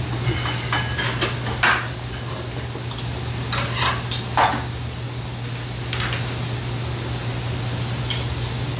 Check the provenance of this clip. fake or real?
real